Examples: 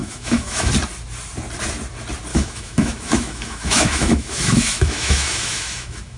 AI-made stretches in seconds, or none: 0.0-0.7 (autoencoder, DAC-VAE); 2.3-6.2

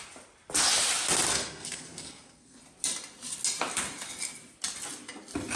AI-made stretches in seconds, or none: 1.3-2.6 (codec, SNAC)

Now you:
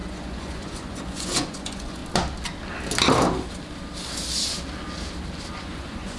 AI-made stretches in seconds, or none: 0.0-2.0 (vocoder, Vocos); 5.5-6.2

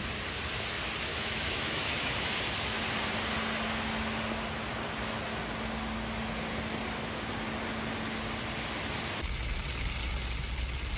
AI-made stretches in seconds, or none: 1.1-2.3 (autoencoder, DAC-VAE)

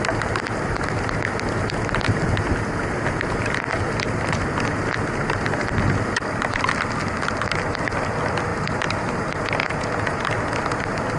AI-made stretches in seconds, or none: 9.6-10.2 (vocoder, Vocos)